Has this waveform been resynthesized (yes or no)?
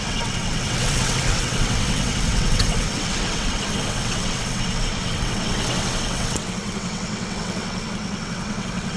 yes